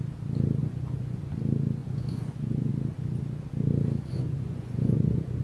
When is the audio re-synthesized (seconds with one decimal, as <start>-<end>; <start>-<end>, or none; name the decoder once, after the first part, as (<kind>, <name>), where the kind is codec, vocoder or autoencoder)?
0.6-1.2 (vocoder, Vocos); 1.8-2.7; 4.1-5.4